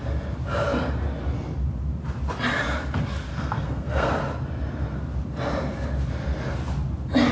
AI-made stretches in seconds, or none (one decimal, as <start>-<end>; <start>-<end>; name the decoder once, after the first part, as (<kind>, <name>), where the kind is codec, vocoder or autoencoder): 3.3-4.1 (codec, SNAC)